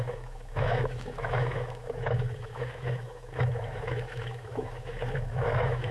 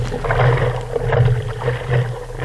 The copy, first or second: first